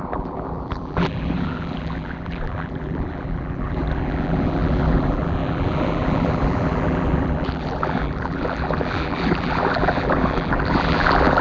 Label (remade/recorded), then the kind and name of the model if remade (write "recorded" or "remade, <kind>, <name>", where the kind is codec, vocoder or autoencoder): remade, vocoder, BigVGAN v2